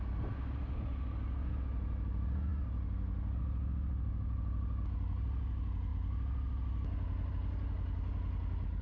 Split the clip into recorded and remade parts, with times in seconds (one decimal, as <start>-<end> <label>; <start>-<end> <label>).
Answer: 0.0-8.8 recorded